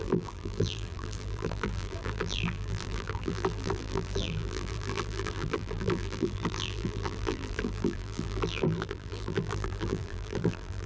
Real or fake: fake